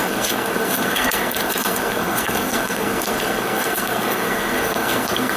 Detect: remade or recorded remade